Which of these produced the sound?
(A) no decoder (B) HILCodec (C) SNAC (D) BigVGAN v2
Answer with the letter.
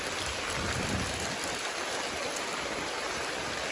A